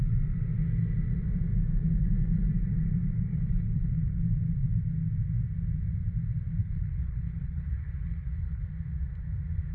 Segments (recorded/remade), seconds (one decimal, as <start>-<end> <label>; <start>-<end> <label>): 0.0-3.3 recorded; 3.3-4.2 remade; 4.2-6.6 recorded; 6.6-8.6 remade; 8.6-9.7 recorded